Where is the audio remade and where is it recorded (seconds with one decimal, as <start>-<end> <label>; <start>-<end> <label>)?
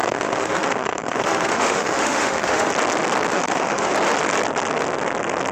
0.0-2.7 remade; 2.7-3.3 recorded; 3.3-3.9 remade; 3.9-5.5 recorded